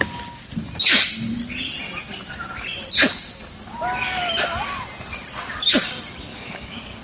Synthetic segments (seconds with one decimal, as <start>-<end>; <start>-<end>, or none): 6.3-7.0